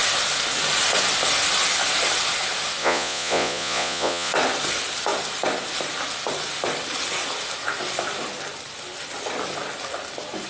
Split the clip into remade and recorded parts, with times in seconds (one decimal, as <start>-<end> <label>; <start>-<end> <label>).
0.0-2.8 recorded; 2.8-4.3 remade; 4.3-10.5 recorded